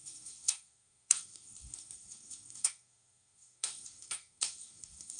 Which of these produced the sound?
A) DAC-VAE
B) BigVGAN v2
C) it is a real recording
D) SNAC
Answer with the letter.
D